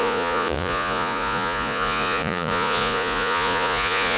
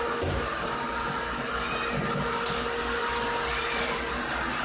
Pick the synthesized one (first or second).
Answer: first